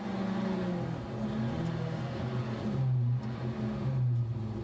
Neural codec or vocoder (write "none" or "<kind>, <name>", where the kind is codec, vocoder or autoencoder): none